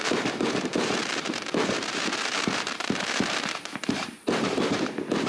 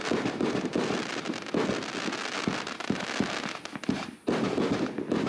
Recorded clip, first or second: second